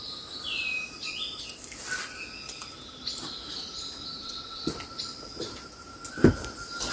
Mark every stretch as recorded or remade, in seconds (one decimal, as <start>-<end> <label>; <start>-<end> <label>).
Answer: 0.0-4.2 recorded; 4.2-4.7 remade; 4.7-6.9 recorded